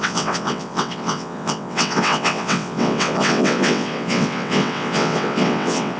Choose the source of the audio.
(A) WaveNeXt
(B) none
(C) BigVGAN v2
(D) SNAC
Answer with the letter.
A